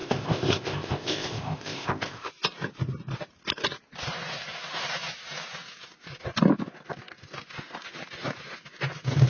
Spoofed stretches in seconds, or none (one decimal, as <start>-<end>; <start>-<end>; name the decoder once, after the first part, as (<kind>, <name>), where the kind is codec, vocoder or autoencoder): 0.0-2.3 (codec, ZipCodec)